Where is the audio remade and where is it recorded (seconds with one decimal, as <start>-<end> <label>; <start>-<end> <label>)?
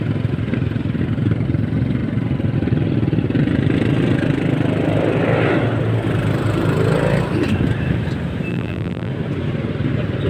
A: 0.0-8.5 recorded; 8.5-9.1 remade; 9.1-10.3 recorded